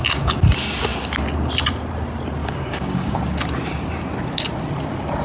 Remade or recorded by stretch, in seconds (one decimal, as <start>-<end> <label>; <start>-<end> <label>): 0.0-2.4 recorded; 2.4-3.2 remade; 3.2-5.2 recorded